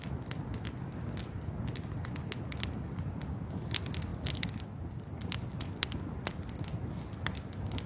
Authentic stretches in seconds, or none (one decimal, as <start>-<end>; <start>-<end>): 0.0-7.9

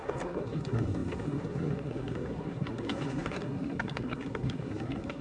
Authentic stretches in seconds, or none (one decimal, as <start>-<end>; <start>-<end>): none

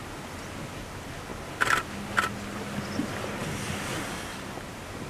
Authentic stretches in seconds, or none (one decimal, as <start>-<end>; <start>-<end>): 0.0-5.1

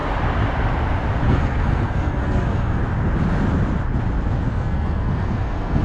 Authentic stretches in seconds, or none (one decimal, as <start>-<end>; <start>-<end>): 0.0-1.3; 2.8-4.4

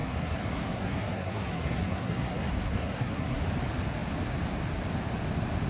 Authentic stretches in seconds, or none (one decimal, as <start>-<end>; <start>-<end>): 3.4-5.7

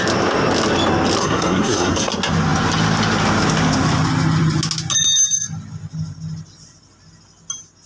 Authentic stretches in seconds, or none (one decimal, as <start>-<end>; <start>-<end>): 0.0-1.2; 2.1-7.9

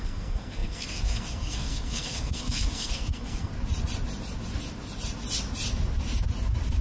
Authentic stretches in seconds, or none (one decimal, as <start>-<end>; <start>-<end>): 3.5-6.8

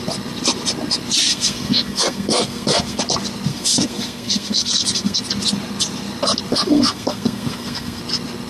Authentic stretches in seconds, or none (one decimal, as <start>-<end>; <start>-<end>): 0.0-1.3; 3.0-3.5; 5.3-6.5; 8.0-8.5